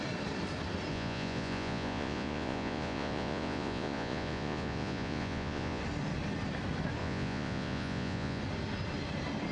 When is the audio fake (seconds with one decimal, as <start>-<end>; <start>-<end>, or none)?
0.9-5.8; 7.0-8.4